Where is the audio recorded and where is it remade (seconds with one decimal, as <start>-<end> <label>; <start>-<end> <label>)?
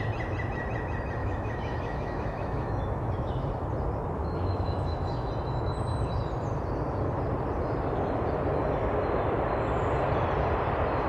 0.0-1.2 recorded; 1.2-3.5 remade; 3.5-4.2 recorded; 4.2-5.3 remade; 5.3-11.1 recorded